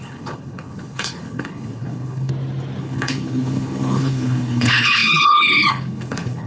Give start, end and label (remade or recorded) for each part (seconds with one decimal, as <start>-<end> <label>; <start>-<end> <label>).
0.0-2.3 remade; 2.3-2.8 recorded; 2.8-6.5 remade